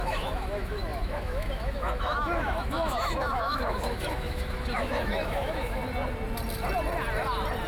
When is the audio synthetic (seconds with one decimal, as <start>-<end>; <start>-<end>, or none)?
0.0-5.8